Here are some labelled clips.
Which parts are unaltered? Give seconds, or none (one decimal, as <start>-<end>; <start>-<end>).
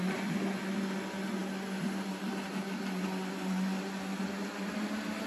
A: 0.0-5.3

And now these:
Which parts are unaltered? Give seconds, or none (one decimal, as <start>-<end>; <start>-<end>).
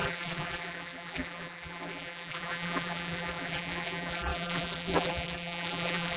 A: none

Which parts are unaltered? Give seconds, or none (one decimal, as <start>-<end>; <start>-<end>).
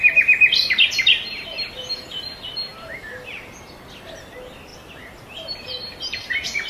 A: 0.0-4.7